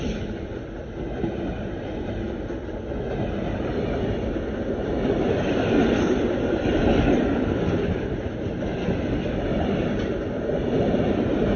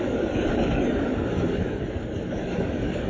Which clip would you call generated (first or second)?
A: second